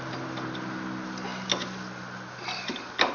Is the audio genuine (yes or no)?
yes